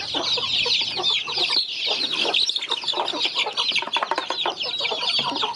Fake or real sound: real